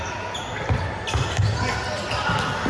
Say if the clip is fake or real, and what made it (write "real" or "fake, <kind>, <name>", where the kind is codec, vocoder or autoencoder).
real